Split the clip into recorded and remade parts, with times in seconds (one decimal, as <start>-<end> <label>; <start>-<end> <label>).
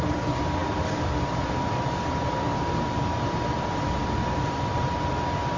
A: 0.0-4.0 recorded; 4.0-5.1 remade; 5.1-5.6 recorded